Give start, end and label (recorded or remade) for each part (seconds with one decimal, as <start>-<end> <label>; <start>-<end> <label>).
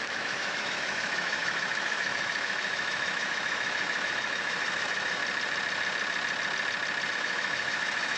0.0-5.2 remade; 5.2-7.1 recorded; 7.1-8.2 remade